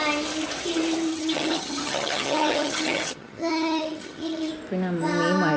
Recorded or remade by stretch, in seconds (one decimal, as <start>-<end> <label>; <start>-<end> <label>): 0.0-1.1 recorded; 1.1-4.5 remade; 4.5-5.6 recorded